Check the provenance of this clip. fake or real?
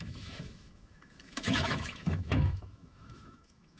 fake